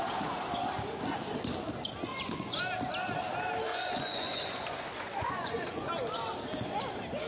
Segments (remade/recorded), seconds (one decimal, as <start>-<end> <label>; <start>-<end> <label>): 0.0-2.1 recorded; 2.1-2.6 remade; 2.6-3.7 recorded; 3.7-5.9 remade; 5.9-7.3 recorded